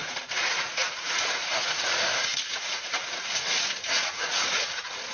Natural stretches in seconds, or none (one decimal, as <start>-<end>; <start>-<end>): none